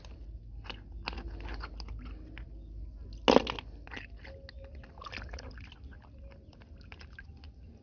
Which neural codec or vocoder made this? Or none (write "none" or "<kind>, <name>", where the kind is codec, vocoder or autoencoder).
none